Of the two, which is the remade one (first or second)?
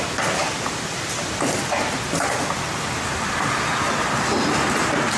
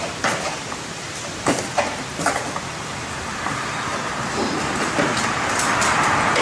second